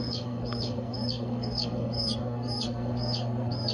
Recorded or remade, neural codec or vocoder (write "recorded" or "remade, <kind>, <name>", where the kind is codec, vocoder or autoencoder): remade, codec, SNAC